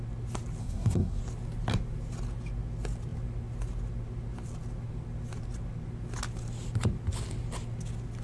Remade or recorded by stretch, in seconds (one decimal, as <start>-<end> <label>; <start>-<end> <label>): 0.0-0.6 recorded; 0.6-1.2 remade; 1.2-8.2 recorded